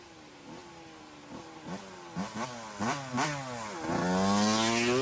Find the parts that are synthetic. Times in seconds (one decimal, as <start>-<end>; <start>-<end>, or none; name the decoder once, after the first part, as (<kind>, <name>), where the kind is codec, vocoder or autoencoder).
none